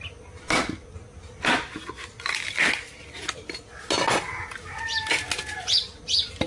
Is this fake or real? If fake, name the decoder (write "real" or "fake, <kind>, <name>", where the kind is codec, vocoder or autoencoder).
real